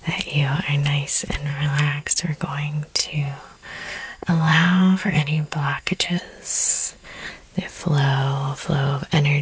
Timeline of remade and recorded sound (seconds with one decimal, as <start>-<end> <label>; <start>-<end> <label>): 0.0-1.5 recorded; 1.5-2.1 remade; 2.1-3.0 recorded; 3.0-6.2 remade; 6.2-6.7 recorded; 6.7-7.3 remade; 7.3-9.4 recorded